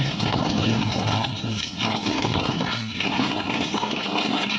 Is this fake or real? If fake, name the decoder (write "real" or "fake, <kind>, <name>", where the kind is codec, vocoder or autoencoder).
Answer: fake, codec, SNAC